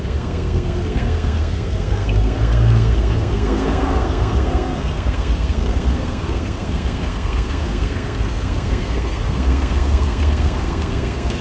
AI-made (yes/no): yes